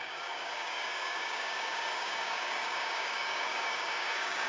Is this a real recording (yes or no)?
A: no